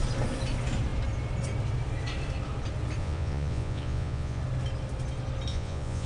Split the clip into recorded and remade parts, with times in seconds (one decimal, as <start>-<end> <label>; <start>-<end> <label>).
0.0-3.0 recorded; 3.0-4.4 remade; 4.4-5.5 recorded; 5.5-6.1 remade